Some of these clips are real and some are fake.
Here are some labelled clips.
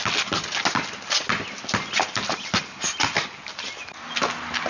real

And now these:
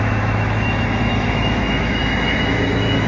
fake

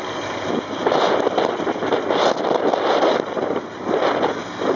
real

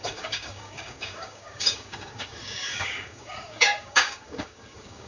fake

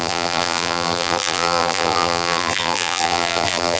fake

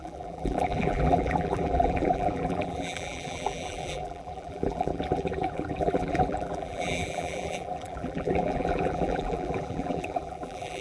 fake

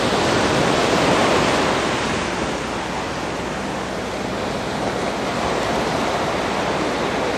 real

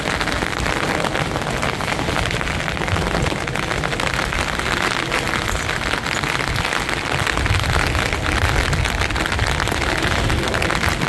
real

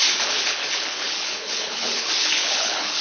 fake